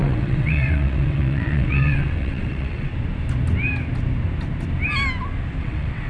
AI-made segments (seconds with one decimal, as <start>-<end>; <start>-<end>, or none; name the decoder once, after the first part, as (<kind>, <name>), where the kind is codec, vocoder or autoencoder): 0.0-2.9 (vocoder, WaveNeXt); 5.6-6.1